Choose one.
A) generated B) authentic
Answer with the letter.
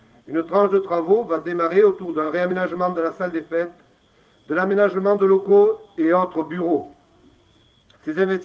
A